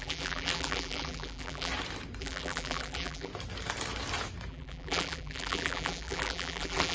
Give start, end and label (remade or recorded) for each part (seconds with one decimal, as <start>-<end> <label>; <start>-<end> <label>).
0.0-1.7 remade; 1.7-2.2 recorded; 2.2-3.3 remade; 3.3-4.5 recorded; 4.5-6.9 remade